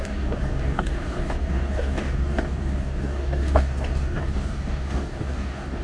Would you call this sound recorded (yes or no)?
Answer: no